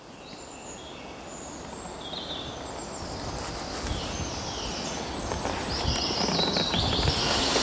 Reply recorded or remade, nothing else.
recorded